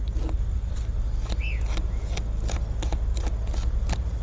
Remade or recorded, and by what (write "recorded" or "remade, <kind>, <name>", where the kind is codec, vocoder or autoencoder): recorded